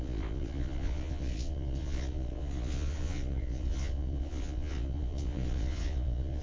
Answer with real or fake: fake